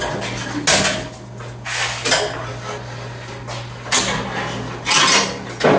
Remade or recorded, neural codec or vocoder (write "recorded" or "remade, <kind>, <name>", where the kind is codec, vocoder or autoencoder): recorded